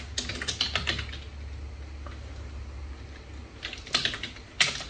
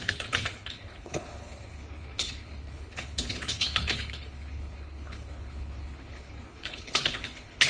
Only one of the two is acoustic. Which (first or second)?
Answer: first